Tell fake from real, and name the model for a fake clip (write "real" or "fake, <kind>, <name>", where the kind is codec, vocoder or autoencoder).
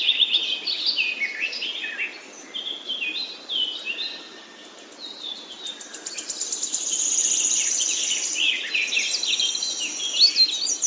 real